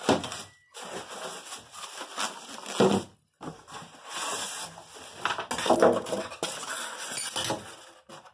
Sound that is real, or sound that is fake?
real